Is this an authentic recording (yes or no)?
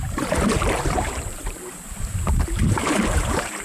no